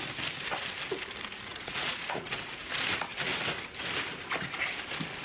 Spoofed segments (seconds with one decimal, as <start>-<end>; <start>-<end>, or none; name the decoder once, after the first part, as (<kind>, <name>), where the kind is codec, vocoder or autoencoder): 1.5-2.3 (vocoder, Vocos)